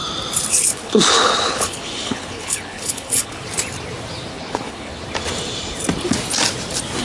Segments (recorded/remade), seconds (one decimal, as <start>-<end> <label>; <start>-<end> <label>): 0.0-0.5 recorded; 0.5-3.4 remade; 3.4-4.3 recorded; 4.3-4.9 remade; 4.9-7.0 recorded